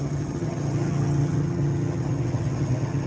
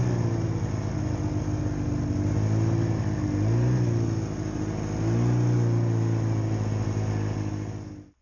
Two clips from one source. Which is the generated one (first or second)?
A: first